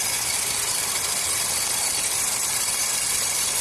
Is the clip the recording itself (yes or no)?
yes